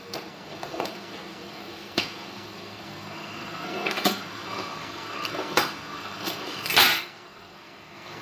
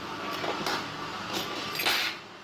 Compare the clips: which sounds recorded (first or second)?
second